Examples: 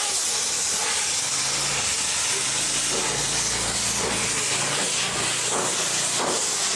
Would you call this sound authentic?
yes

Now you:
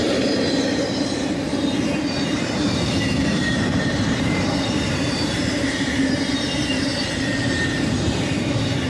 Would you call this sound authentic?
no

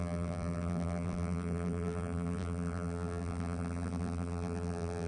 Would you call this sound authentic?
no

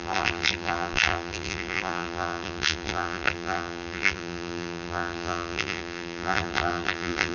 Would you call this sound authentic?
no